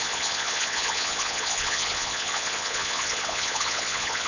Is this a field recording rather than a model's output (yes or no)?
no